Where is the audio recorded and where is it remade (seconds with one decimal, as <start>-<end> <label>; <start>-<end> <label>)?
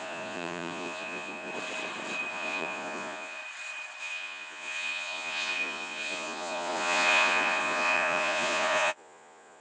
0.0-1.5 remade; 1.5-2.3 recorded; 2.3-3.4 remade; 3.4-4.0 recorded; 4.0-9.6 remade